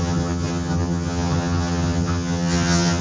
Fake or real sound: fake